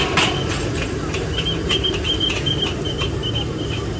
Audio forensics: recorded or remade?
recorded